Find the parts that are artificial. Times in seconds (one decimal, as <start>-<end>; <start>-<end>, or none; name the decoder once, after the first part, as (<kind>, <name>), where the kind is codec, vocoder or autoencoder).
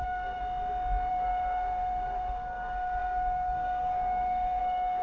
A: 0.0-0.4 (codec, SNAC); 1.1-5.0